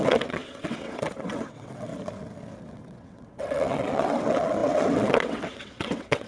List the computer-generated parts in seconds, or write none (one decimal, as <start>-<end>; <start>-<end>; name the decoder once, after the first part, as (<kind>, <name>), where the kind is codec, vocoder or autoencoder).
0.0-1.9 (vocoder, WaveNeXt); 2.6-6.3